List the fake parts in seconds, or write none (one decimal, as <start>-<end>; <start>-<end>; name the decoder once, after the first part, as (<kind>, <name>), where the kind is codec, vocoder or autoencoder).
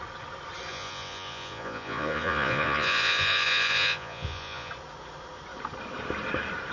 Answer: 0.7-4.7 (vocoder, Vocos)